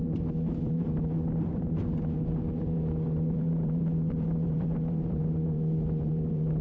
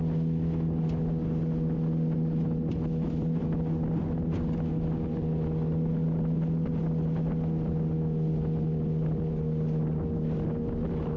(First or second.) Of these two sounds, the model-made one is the first